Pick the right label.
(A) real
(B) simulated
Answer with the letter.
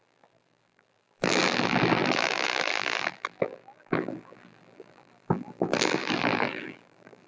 B